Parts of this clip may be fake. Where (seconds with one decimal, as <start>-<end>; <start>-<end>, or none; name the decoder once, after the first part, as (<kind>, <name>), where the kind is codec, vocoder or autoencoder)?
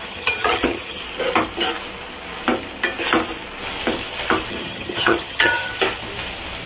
0.0-1.0 (vocoder, HiFi-GAN); 4.5-5.7